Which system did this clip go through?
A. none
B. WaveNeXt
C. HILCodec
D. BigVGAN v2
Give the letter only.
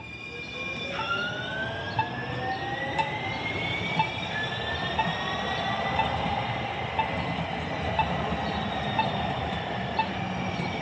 A